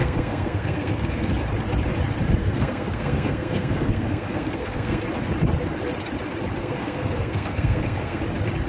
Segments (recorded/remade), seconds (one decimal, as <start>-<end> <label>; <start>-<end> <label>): 0.0-1.3 remade; 1.3-2.4 recorded; 2.4-5.0 remade; 5.0-6.6 recorded; 6.6-8.2 remade; 8.2-8.7 recorded